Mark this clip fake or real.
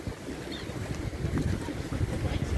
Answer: real